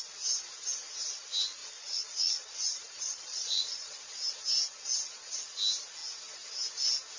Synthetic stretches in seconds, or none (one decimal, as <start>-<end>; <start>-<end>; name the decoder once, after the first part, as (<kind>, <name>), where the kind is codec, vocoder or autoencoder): 1.6-4.0 (vocoder, Vocos)